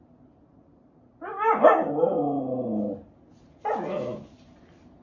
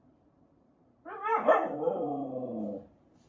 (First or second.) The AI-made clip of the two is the second